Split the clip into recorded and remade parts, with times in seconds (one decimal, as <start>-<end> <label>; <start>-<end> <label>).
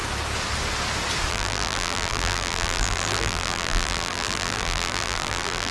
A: 0.0-1.3 recorded; 1.3-5.7 remade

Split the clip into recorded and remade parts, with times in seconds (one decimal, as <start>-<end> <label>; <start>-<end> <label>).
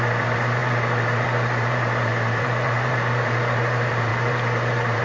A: 0.0-5.0 remade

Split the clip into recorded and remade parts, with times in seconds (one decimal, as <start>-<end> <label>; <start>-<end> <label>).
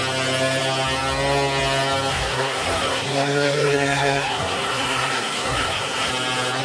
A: 0.0-2.1 recorded; 2.1-6.1 remade; 6.1-6.6 recorded